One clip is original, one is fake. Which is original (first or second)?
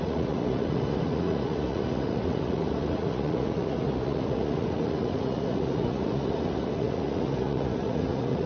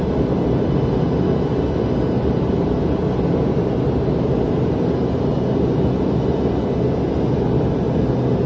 second